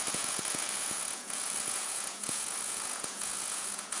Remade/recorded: remade